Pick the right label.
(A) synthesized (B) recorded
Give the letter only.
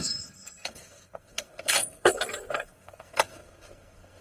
A